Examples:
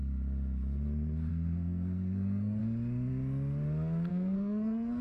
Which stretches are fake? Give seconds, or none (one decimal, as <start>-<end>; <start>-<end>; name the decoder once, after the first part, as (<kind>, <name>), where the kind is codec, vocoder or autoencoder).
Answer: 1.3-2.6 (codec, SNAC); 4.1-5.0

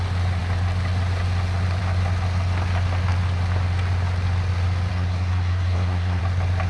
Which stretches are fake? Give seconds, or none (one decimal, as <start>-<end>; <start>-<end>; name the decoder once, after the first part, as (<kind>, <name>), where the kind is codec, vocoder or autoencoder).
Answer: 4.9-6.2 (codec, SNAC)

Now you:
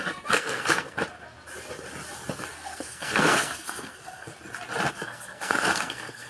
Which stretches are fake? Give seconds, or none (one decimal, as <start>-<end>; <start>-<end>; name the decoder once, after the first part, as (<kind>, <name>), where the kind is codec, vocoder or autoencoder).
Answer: 0.0-1.0 (codec, SNAC); 2.5-4.3; 4.9-6.3

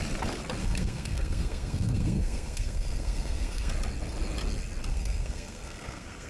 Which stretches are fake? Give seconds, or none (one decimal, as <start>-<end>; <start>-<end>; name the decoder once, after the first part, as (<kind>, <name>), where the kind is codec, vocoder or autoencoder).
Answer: 0.6-3.7 (codec, SNAC); 4.9-6.3

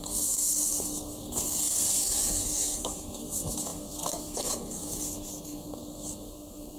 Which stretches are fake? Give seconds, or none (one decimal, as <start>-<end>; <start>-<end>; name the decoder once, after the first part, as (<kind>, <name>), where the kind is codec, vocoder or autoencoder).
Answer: 0.0-6.8 (codec, SNAC)

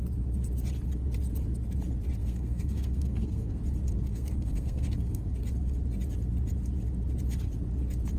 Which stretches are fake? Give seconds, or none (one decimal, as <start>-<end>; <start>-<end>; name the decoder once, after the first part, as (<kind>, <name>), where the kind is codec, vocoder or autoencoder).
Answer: 2.2-3.6 (codec, SNAC); 4.1-5.2